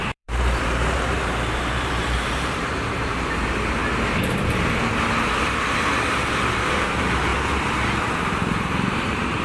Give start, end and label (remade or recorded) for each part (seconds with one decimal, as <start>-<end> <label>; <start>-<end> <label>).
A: 0.0-3.8 remade; 3.8-6.5 recorded; 6.5-7.3 remade; 7.3-8.2 recorded; 8.2-9.4 remade